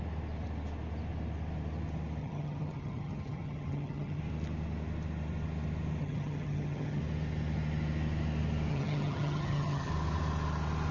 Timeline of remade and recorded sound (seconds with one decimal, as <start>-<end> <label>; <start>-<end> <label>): 0.0-2.2 recorded; 2.2-4.2 remade; 4.2-6.0 recorded; 6.0-7.0 remade; 7.0-8.7 recorded; 8.7-9.9 remade; 9.9-10.9 recorded